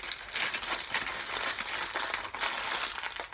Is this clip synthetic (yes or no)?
no